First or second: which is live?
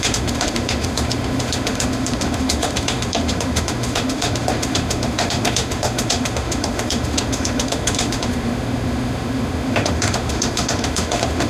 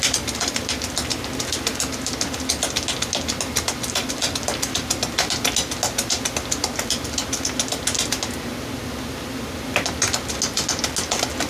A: second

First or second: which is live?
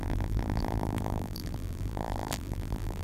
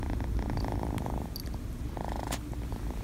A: second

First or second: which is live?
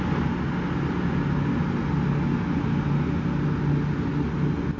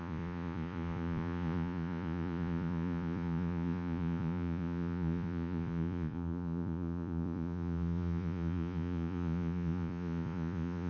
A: first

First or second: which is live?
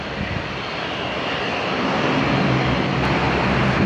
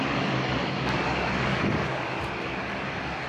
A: first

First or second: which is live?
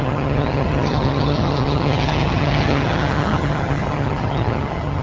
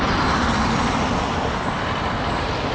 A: second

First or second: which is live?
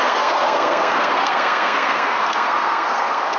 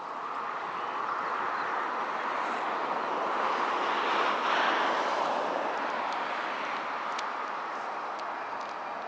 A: second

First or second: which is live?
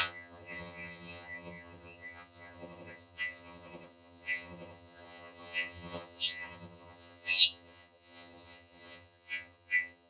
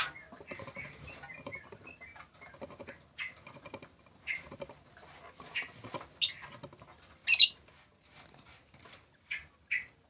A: second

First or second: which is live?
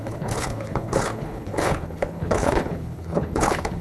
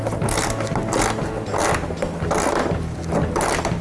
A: second